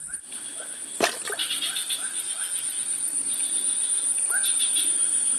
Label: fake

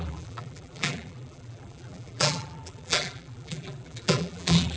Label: fake